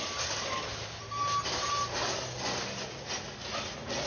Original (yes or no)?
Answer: yes